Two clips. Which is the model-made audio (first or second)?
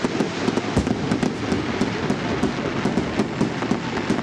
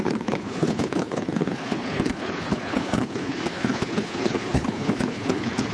second